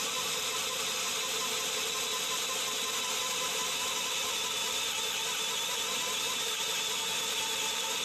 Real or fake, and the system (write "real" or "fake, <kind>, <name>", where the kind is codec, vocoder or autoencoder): real